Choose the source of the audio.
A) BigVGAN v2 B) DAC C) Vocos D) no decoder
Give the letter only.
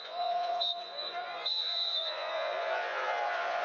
C